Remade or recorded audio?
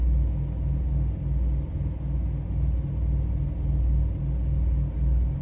recorded